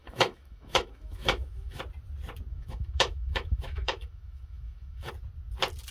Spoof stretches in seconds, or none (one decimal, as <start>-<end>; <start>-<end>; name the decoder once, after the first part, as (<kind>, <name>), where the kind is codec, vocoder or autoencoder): 0.0-1.8 (autoencoder, DAC-VAE); 2.5-5.1